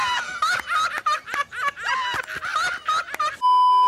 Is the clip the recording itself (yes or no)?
yes